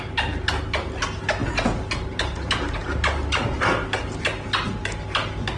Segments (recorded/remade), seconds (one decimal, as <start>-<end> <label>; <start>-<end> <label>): 0.0-5.6 recorded